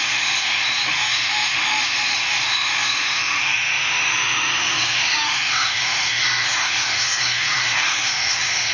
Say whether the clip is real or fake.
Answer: fake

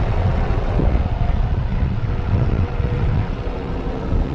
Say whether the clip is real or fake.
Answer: fake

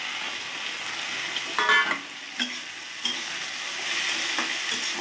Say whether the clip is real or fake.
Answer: real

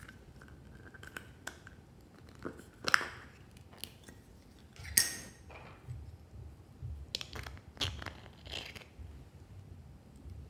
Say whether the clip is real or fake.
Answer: real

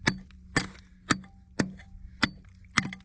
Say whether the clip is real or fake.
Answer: real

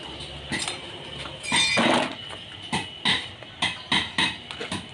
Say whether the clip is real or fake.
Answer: real